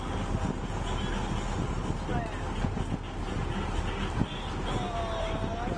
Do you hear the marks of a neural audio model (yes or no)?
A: no